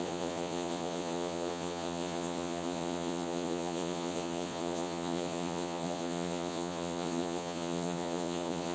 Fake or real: fake